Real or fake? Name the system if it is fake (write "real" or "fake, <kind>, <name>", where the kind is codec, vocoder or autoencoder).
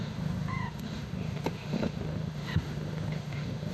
fake, autoencoder, DAC-VAE